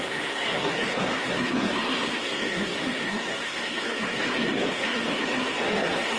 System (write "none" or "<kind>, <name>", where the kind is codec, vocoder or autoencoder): codec, SNAC